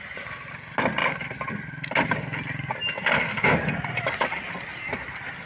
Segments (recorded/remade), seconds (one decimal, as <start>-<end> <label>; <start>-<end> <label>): 0.0-5.5 recorded